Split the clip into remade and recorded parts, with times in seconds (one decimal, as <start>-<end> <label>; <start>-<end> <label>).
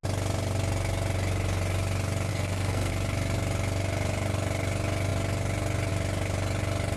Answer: 0.0-2.3 recorded; 2.3-2.9 remade; 2.9-7.0 recorded